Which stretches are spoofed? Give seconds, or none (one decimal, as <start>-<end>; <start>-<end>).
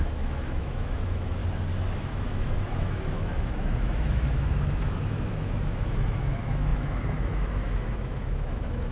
0.0-1.4; 1.9-8.9